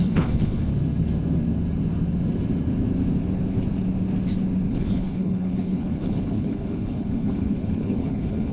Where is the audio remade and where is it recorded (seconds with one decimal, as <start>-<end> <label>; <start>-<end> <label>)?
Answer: 0.0-0.7 remade; 0.7-4.7 recorded; 4.7-8.5 remade

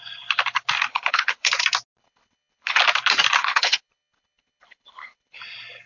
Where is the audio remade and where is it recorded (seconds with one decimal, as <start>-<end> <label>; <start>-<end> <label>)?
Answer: 0.0-0.9 recorded; 0.9-1.5 remade; 1.5-2.0 recorded; 2.0-2.8 remade; 2.8-3.4 recorded; 3.4-5.4 remade; 5.4-5.9 recorded

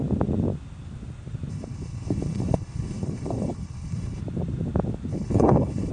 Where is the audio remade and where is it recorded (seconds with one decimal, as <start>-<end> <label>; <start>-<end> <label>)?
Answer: 0.0-1.5 recorded; 1.5-4.2 remade; 4.2-5.1 recorded; 5.1-5.9 remade